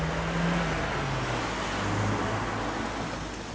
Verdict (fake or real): real